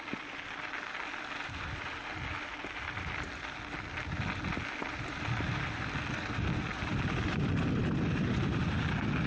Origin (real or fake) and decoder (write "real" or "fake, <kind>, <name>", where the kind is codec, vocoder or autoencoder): real